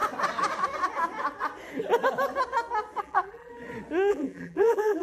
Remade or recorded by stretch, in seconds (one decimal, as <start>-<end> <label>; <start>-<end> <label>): 0.0-3.0 recorded; 3.0-3.5 remade; 3.5-4.1 recorded; 4.1-5.0 remade